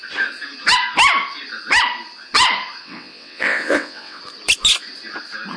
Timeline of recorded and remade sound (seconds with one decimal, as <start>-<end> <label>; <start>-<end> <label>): 0.0-2.8 recorded; 2.8-4.2 remade; 4.2-5.6 recorded